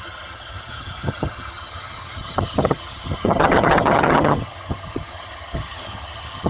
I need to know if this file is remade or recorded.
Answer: remade